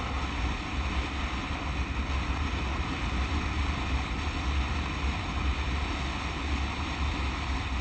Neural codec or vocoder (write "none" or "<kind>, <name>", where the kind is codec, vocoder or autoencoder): none